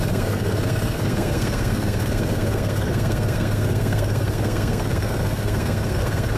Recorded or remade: remade